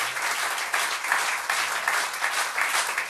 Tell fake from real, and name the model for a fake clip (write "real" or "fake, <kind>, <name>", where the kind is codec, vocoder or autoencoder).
real